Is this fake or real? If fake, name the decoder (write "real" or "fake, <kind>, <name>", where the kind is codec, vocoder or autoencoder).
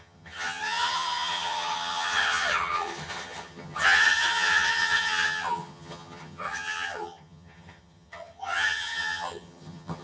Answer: fake, vocoder, HiFi-GAN